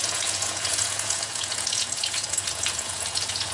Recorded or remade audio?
remade